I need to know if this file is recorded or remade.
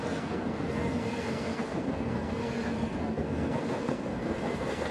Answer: remade